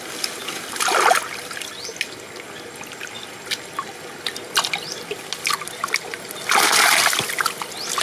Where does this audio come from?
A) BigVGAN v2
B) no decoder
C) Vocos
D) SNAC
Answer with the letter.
B